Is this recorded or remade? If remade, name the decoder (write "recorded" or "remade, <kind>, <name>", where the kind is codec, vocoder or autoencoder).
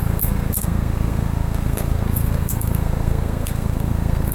remade, codec, SNAC